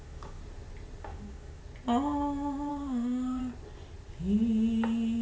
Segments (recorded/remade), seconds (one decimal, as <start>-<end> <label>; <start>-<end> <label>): 0.0-0.4 remade; 0.4-1.0 recorded; 1.0-1.6 remade; 1.6-2.7 recorded; 2.7-3.4 remade; 3.4-5.2 recorded